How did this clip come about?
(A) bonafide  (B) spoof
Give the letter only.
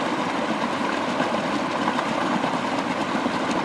A